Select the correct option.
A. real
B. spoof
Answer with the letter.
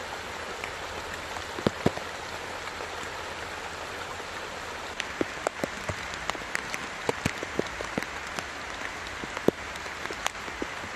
A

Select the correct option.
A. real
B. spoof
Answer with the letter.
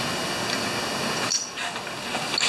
A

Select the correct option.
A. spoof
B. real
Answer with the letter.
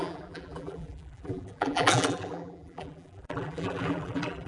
A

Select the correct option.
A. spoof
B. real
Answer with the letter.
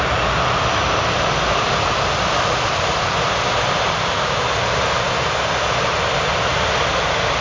B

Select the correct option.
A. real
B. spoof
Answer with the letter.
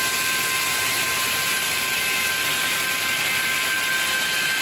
A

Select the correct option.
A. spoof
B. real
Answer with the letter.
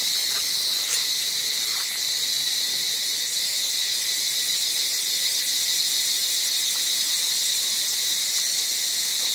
B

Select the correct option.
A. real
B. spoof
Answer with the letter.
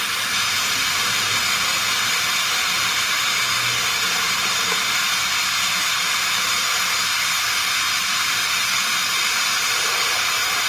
B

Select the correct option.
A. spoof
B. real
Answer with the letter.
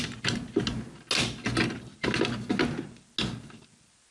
B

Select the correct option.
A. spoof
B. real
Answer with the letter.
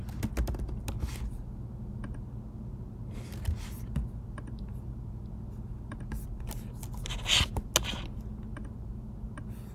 B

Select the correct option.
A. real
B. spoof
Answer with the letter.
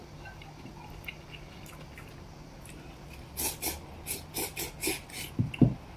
A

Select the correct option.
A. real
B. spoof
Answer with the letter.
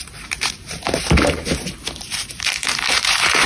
B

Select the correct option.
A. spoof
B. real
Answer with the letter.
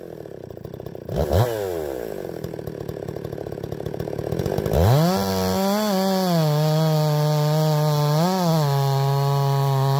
B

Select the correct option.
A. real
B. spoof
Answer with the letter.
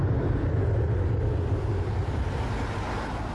A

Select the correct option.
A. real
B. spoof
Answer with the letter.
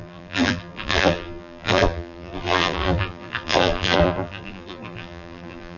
B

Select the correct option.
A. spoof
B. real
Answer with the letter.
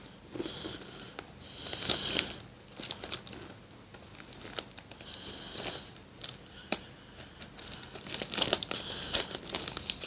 B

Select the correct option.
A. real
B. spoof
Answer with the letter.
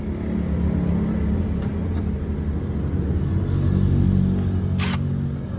A